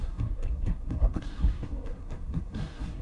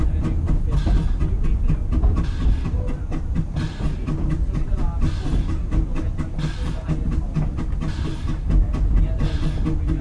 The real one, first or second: second